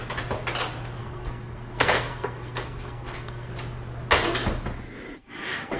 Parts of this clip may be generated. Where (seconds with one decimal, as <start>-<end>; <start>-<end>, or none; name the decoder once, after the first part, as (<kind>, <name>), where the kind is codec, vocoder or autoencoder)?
1.0-3.5 (codec, SNAC); 5.2-5.8

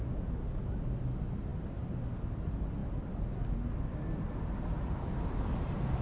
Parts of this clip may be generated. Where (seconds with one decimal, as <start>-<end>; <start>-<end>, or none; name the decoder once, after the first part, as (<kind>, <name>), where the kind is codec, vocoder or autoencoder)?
none

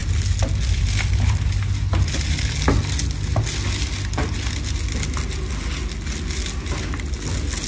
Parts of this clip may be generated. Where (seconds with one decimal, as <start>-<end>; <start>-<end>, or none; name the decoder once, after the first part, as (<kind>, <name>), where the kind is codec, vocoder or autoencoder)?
none